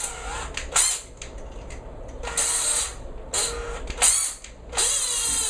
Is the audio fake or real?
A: real